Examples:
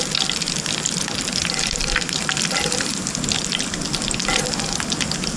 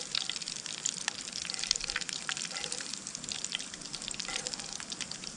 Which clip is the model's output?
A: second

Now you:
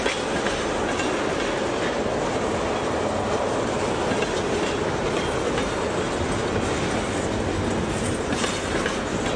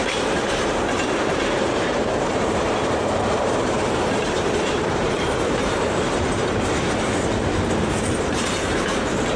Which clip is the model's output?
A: second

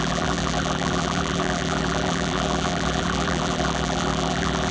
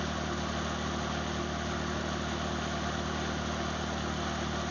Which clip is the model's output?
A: first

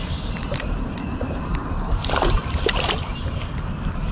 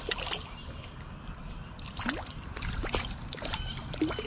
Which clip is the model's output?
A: first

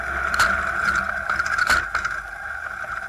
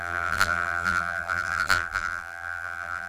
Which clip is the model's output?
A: second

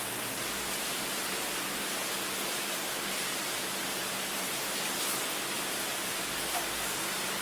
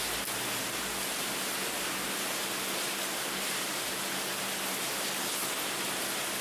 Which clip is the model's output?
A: first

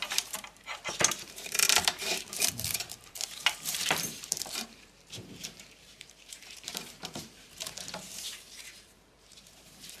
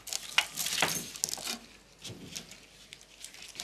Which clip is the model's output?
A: first